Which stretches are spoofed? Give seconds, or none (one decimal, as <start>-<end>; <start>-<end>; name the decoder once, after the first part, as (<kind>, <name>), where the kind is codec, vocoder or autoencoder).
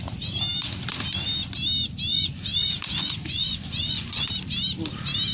2.1-4.3 (vocoder, Vocos)